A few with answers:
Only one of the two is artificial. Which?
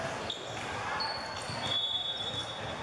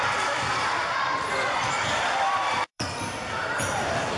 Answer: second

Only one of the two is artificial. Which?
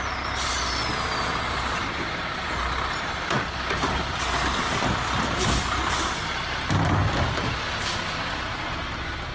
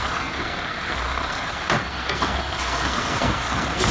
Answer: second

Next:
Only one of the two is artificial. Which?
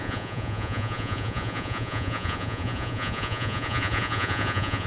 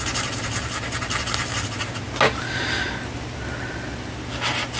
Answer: first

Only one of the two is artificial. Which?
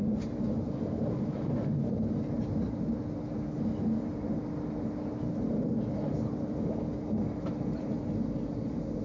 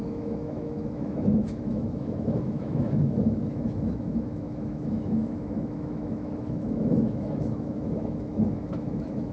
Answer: second